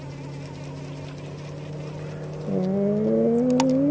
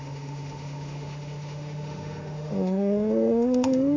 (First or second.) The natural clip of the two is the first